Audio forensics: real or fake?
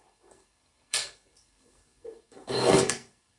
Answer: fake